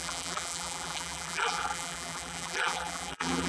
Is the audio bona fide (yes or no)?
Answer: no